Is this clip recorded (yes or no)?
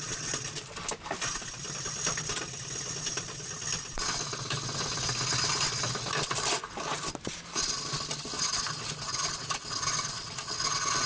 yes